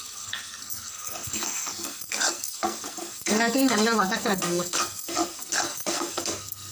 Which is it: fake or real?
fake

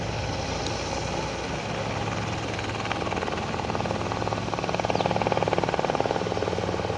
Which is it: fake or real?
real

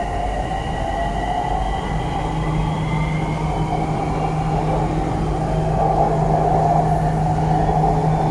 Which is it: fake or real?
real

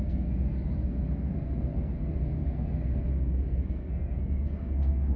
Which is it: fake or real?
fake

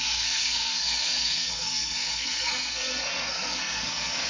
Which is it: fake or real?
fake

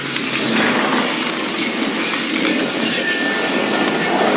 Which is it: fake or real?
real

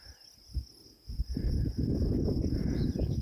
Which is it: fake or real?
real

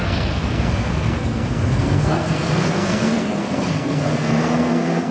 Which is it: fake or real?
fake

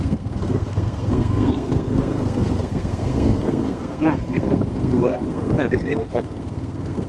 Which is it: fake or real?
fake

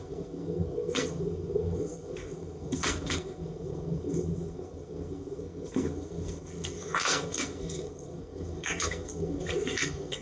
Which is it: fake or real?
fake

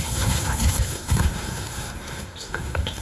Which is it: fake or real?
fake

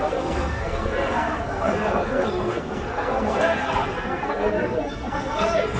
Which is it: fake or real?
fake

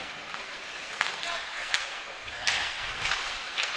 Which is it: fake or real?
fake